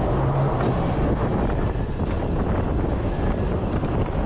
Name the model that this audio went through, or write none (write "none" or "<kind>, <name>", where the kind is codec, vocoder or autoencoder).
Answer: none